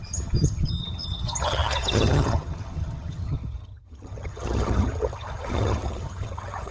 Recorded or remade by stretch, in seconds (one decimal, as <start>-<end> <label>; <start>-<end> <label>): 0.0-6.7 remade